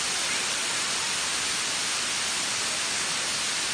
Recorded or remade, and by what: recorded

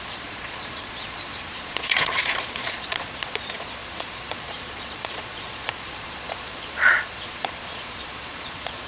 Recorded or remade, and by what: remade, vocoder, Vocos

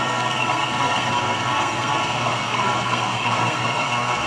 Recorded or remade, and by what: remade, codec, SNAC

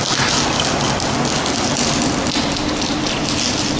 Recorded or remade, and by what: recorded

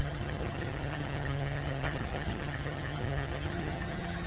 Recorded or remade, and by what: remade, vocoder, HiFi-GAN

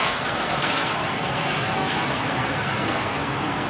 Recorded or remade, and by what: remade, codec, SNAC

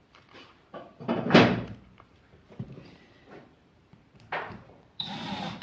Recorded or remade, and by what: remade, vocoder, BigVGAN v2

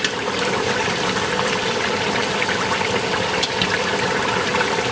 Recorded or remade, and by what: recorded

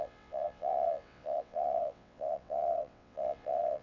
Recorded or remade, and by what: remade, vocoder, WaveNeXt